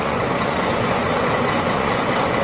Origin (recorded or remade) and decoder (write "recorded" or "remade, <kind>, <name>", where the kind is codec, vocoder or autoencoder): remade, vocoder, Vocos